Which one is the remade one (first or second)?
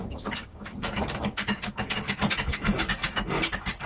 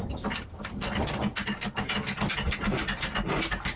first